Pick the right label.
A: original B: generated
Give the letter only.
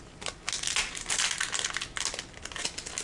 A